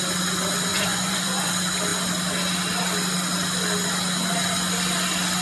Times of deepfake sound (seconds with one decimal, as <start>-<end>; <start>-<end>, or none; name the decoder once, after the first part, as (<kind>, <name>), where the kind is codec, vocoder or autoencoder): 0.7-1.5 (vocoder, Vocos)